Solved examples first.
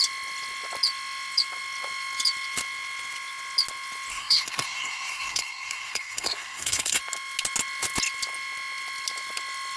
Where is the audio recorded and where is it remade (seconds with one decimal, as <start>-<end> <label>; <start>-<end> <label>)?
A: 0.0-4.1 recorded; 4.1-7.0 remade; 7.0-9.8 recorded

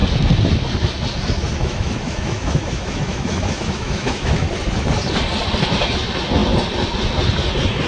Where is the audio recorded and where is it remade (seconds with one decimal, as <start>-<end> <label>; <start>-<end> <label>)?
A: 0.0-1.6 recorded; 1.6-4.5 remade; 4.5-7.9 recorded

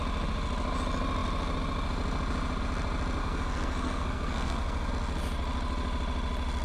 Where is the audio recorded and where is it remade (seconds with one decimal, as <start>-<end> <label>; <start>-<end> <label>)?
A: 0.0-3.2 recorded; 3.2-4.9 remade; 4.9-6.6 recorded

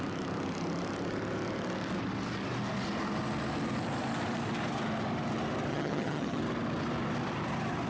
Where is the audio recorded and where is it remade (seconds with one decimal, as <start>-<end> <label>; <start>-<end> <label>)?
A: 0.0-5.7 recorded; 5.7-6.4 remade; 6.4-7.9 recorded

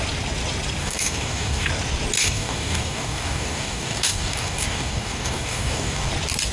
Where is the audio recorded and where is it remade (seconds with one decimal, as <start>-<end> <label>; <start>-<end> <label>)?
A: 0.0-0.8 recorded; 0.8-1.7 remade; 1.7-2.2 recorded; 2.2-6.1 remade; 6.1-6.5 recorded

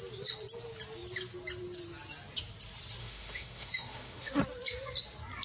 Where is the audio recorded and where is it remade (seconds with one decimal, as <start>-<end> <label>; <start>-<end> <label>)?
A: 0.0-3.0 recorded; 3.0-4.3 remade; 4.3-5.4 recorded

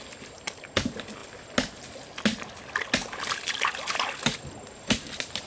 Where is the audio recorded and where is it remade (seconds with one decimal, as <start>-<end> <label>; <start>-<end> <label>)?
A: 0.0-5.5 recorded

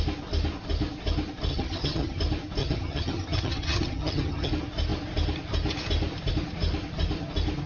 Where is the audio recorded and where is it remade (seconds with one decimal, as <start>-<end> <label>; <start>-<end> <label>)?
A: 0.0-1.5 recorded; 1.5-2.2 remade; 2.2-2.6 recorded; 2.6-4.5 remade; 4.5-7.7 recorded